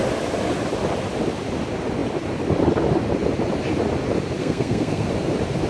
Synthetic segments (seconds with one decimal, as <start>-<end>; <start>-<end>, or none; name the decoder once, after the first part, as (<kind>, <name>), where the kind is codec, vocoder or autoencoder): 4.4-5.1 (codec, SNAC)